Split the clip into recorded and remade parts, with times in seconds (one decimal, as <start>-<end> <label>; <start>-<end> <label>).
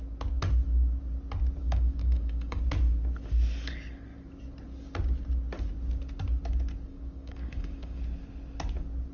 0.0-1.6 recorded; 1.6-2.6 remade; 2.6-6.9 recorded; 6.9-8.0 remade; 8.0-9.1 recorded